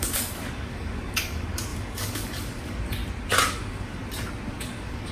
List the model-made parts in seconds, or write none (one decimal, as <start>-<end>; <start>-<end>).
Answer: 0.0-3.0; 3.6-4.0; 4.6-5.1